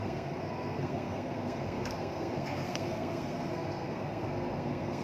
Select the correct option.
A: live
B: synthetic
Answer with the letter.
B